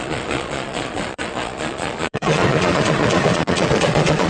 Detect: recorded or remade remade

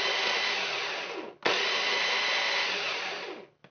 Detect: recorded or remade recorded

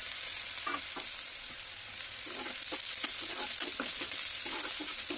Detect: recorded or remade recorded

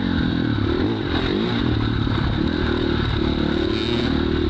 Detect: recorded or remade recorded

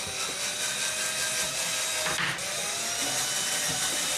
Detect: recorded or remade recorded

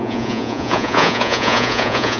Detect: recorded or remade remade